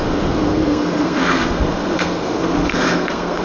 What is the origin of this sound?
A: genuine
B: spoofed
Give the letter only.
B